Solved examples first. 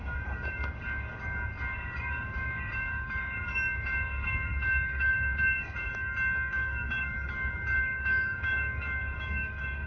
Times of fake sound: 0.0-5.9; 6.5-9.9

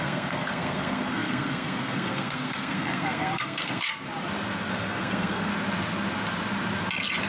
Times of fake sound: 0.0-3.9; 4.7-5.5

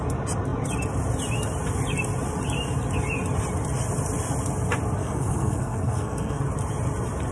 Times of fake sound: 5.0-6.4

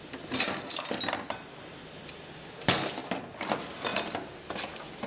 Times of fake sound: none

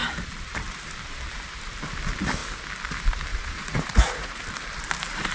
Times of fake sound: 3.3-4.4

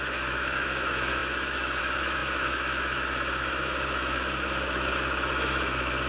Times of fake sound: 0.0-6.1

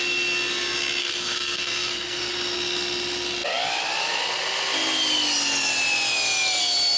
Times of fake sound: 1.0-2.3

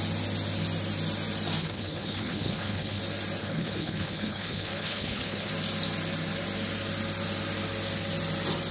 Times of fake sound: 1.6-3.0; 3.4-5.5